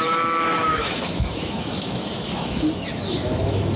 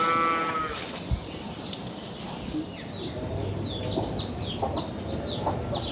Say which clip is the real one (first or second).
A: second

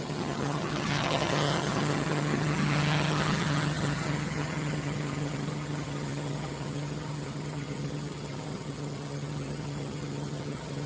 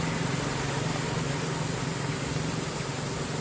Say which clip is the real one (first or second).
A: second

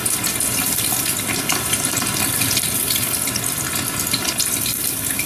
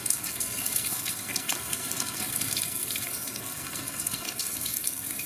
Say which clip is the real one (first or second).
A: first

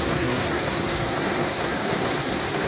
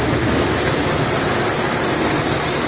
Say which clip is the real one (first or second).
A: second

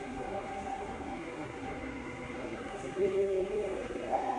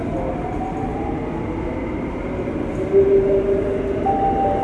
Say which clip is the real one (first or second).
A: second